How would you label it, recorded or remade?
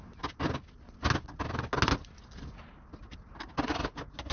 recorded